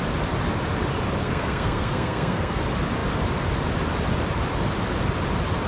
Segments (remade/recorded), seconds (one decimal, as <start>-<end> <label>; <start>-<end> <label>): 0.0-1.2 recorded; 1.2-2.6 remade; 2.6-5.7 recorded

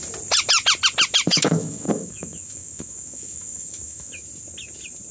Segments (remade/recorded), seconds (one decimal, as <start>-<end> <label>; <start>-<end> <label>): 0.0-1.3 recorded; 1.3-4.1 remade; 4.1-5.1 recorded

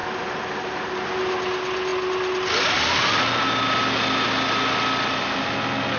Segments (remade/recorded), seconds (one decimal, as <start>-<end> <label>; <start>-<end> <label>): 0.0-6.0 recorded

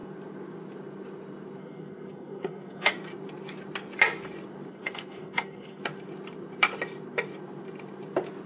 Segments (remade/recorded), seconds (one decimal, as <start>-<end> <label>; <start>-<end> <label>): 0.0-1.6 recorded; 1.6-2.9 remade; 2.9-4.7 recorded; 4.7-5.8 remade; 5.8-8.5 recorded